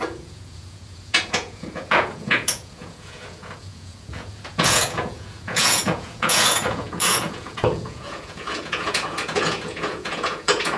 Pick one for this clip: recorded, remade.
remade